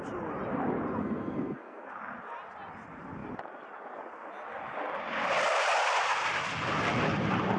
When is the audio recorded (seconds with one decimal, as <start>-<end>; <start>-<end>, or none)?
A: 0.0-1.0; 1.9-7.6